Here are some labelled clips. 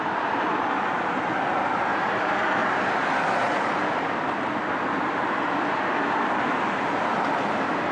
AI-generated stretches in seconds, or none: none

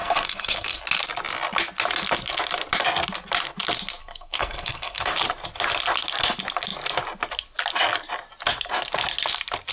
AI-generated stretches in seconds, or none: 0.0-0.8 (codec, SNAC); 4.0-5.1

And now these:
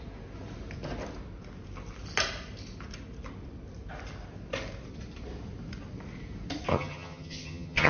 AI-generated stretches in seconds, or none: 6.7-7.9 (vocoder, HiFi-GAN)

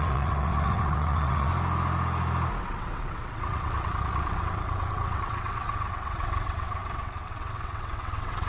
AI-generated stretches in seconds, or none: 0.0-1.5 (vocoder, WaveNeXt); 2.6-8.5